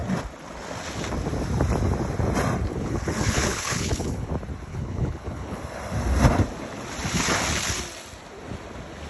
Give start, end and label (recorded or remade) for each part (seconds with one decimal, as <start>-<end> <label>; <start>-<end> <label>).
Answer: 0.0-2.7 recorded; 2.7-4.3 remade; 4.3-4.7 recorded; 4.7-5.6 remade; 5.6-9.1 recorded